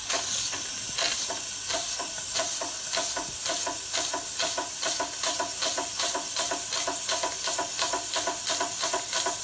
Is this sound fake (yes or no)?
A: no